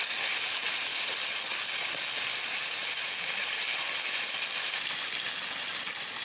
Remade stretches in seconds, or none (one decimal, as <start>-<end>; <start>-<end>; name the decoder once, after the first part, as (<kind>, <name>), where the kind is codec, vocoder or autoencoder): none